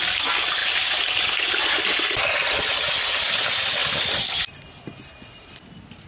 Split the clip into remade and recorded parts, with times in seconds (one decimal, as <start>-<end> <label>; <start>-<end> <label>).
0.0-6.1 recorded